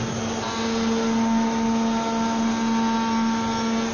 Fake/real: real